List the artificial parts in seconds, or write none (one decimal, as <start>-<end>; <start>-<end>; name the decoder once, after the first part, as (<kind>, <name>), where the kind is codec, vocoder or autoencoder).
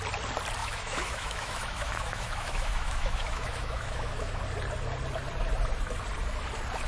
0.6-4.4 (autoencoder, DAC-VAE)